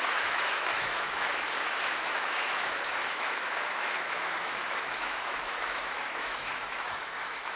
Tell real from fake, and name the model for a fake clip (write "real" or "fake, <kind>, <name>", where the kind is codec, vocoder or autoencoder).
fake, autoencoder, DAC-VAE